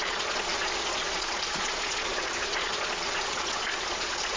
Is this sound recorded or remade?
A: remade